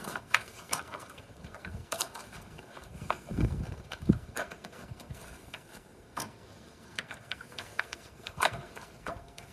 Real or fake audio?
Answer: fake